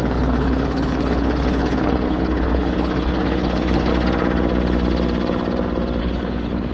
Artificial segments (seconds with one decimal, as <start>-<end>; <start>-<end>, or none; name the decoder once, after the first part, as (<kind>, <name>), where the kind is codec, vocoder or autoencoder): 0.0-3.9 (codec, HILCodec); 6.0-6.7